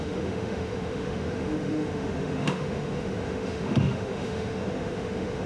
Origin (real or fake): fake